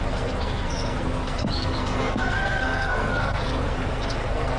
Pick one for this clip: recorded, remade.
remade